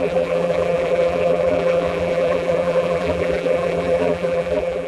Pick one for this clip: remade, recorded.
remade